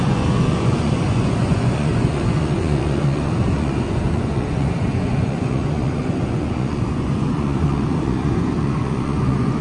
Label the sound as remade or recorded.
remade